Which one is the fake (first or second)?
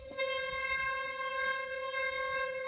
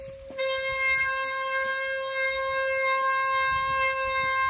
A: first